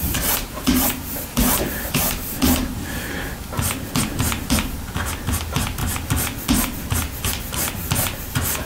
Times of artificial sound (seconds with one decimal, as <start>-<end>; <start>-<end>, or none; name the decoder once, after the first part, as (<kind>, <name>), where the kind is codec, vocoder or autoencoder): none